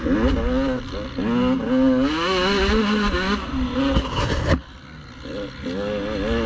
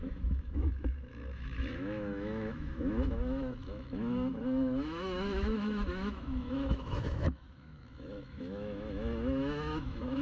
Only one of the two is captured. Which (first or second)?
first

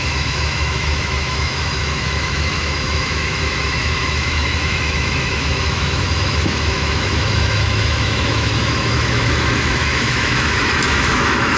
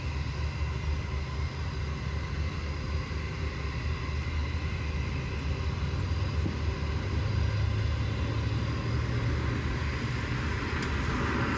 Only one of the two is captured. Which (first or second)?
second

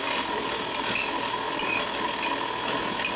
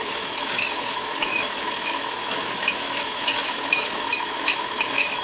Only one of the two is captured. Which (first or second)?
first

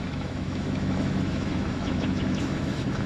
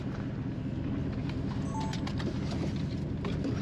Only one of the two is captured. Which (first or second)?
second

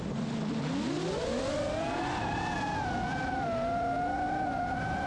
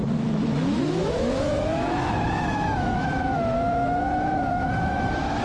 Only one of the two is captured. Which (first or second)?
first